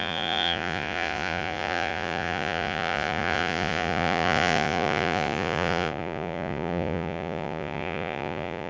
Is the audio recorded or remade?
remade